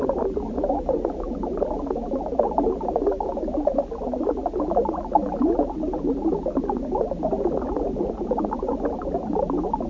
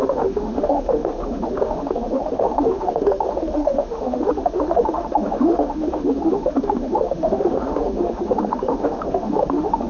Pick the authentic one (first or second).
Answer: first